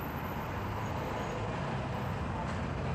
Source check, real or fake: real